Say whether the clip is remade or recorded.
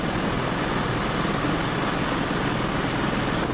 recorded